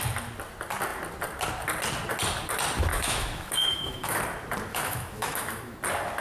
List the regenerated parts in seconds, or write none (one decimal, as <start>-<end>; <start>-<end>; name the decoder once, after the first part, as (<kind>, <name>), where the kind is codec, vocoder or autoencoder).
2.9-4.2 (autoencoder, DAC-VAE); 4.7-5.8